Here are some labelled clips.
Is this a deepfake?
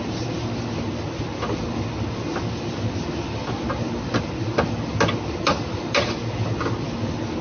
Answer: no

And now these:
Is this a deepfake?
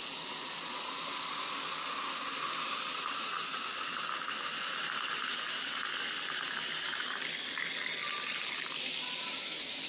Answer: no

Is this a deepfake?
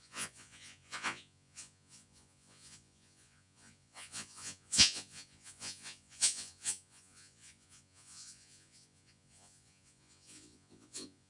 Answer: yes